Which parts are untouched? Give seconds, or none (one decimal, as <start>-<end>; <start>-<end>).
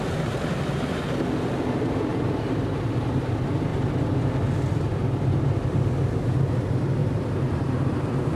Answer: 0.0-2.1; 3.3-7.0